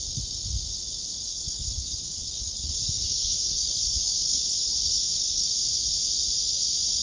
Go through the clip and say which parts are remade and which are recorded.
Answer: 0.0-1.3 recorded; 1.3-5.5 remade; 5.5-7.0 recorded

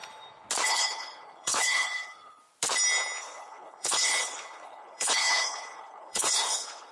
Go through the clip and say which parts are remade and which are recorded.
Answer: 0.0-0.7 recorded; 0.7-2.4 remade; 2.4-3.2 recorded; 3.2-6.9 remade

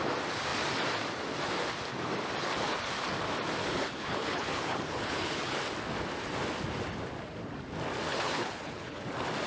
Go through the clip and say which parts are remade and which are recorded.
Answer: 0.0-2.4 recorded; 2.4-2.9 remade; 2.9-3.6 recorded; 3.6-5.6 remade; 5.6-8.1 recorded; 8.1-9.0 remade; 9.0-9.5 recorded

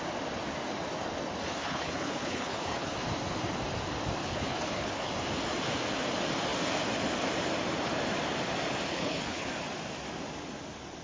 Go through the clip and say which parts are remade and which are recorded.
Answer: 0.0-1.6 recorded; 1.6-2.9 remade; 2.9-4.2 recorded; 4.2-5.1 remade; 5.1-8.9 recorded; 8.9-9.5 remade; 9.5-11.0 recorded